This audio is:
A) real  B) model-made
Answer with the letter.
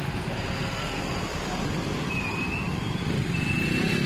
A